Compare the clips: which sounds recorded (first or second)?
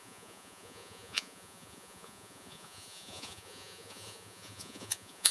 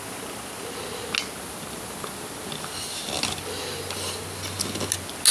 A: second